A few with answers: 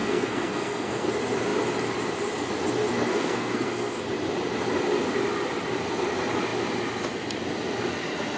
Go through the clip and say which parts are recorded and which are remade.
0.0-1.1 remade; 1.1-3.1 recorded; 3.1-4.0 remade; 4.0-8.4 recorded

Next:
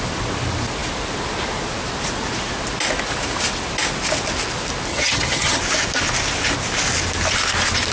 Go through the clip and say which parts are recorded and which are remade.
0.0-4.9 recorded; 4.9-5.6 remade; 5.6-7.9 recorded

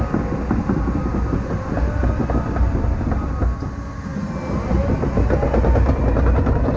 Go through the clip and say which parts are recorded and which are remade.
0.0-6.8 recorded